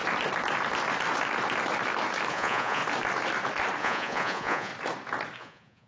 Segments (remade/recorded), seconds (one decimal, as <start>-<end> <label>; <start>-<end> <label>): 0.0-2.3 recorded; 2.3-2.8 remade; 2.8-3.8 recorded; 3.8-4.7 remade; 4.7-5.4 recorded; 5.4-5.9 remade